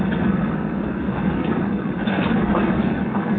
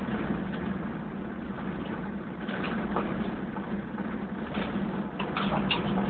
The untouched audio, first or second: second